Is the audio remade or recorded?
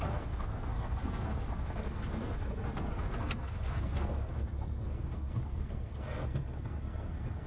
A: remade